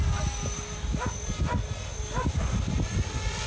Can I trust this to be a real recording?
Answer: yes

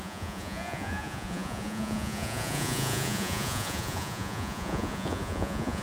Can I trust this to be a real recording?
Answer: no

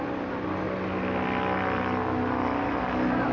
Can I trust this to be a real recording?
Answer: yes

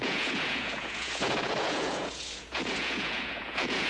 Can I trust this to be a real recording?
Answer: no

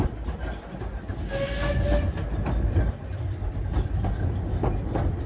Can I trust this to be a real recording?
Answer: yes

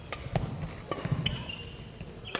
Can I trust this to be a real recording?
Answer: yes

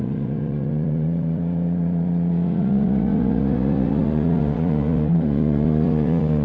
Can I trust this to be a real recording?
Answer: no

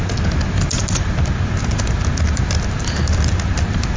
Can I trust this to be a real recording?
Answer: yes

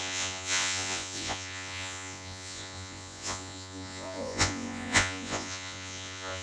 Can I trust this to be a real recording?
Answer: no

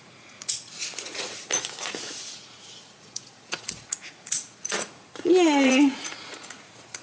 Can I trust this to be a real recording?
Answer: no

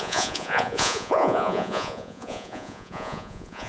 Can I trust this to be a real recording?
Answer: no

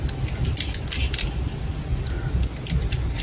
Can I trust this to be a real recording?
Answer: yes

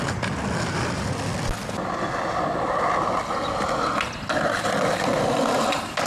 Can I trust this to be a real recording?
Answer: yes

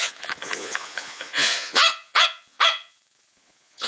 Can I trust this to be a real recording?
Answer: no